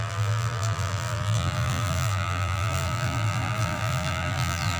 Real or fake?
fake